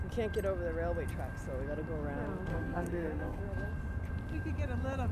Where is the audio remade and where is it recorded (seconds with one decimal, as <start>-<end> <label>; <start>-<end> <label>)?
0.0-2.5 recorded; 2.5-3.4 remade; 3.4-5.1 recorded